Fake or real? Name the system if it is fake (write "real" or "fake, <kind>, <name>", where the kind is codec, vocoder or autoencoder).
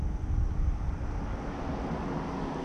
real